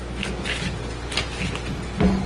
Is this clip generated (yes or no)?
no